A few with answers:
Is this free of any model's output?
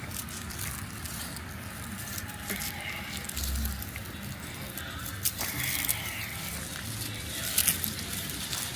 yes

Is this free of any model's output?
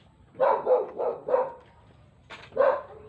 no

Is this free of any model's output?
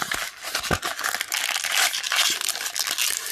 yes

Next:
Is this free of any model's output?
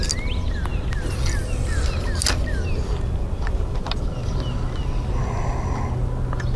yes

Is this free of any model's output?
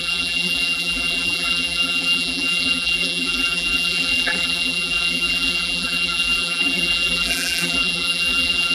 no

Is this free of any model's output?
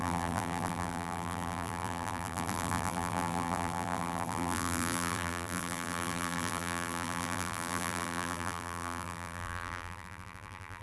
no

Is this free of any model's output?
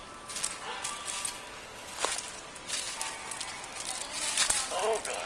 yes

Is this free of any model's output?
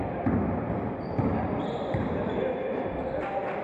yes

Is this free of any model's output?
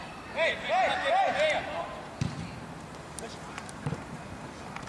no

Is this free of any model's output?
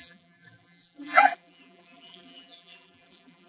no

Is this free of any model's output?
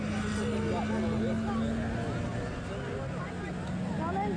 yes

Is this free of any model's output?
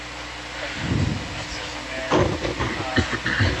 yes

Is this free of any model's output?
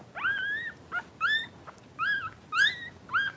yes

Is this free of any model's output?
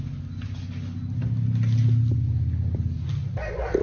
yes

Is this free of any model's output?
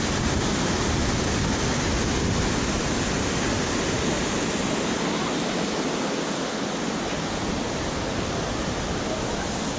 yes